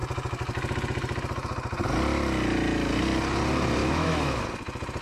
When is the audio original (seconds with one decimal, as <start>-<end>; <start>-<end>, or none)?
0.0-3.8; 4.4-5.0